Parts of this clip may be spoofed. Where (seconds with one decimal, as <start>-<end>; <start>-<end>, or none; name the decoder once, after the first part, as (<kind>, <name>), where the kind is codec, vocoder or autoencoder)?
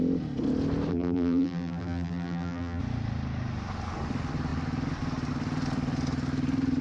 0.9-2.8 (vocoder, BigVGAN v2)